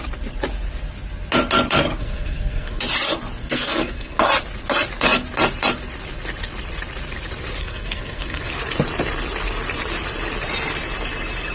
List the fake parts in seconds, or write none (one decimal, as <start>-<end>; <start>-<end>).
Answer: 2.0-2.8; 3.4-4.2; 7.6-8.5

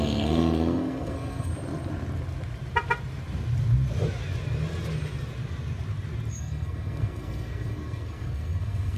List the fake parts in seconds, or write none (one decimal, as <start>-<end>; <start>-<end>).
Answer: 0.0-1.5; 6.3-9.0

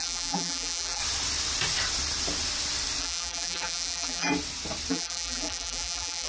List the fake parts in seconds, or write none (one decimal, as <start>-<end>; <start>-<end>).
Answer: 0.0-1.0; 3.0-4.3; 4.9-6.3

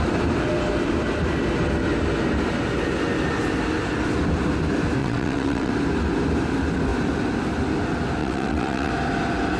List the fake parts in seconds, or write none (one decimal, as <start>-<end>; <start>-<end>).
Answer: 5.0-5.7; 8.2-8.9